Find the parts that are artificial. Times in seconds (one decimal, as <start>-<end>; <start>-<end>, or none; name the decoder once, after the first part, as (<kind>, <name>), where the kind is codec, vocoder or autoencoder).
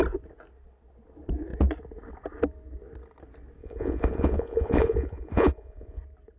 3.6-6.0 (vocoder, Vocos)